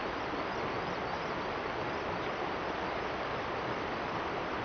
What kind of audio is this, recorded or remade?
recorded